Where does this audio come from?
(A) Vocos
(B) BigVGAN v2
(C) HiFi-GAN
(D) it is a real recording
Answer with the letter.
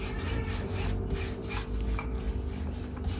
D